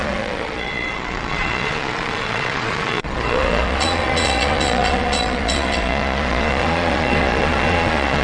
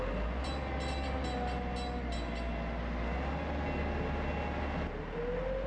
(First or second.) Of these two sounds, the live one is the second